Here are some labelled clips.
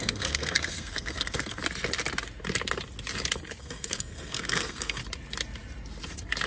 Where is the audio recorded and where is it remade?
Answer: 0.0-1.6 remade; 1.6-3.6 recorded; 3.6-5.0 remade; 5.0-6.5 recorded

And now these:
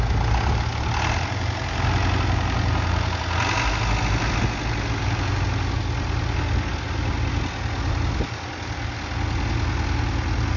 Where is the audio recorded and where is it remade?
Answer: 0.0-10.6 recorded